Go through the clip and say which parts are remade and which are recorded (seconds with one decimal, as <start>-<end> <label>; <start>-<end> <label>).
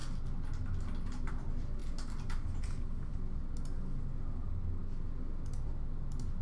0.0-6.4 recorded